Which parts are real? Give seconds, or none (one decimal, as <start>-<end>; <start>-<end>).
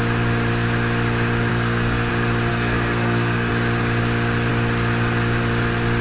0.0-1.5; 2.1-2.5; 3.5-6.0